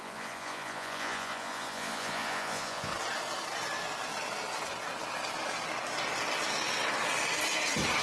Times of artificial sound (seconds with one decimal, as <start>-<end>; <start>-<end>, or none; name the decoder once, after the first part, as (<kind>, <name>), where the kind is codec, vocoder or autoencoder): 0.0-2.9 (vocoder, Vocos)